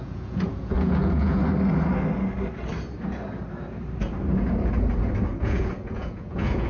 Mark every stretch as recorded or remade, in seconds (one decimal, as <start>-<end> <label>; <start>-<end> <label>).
0.0-1.4 remade; 1.4-5.4 recorded; 5.4-6.7 remade